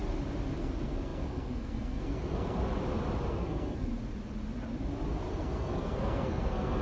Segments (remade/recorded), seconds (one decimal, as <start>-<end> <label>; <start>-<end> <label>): 0.0-0.6 recorded; 0.6-2.6 remade; 2.6-3.3 recorded; 3.3-3.9 remade; 3.9-5.3 recorded; 5.3-6.8 remade